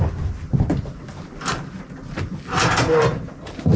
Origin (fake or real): real